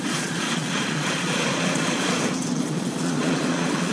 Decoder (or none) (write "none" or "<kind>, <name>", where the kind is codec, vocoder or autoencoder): vocoder, Vocos